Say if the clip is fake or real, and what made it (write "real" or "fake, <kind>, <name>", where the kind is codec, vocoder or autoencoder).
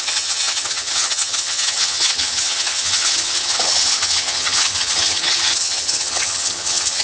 fake, vocoder, HiFi-GAN